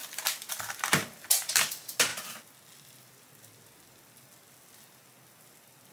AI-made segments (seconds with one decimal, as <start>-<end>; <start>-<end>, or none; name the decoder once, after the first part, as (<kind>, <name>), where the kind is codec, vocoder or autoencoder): none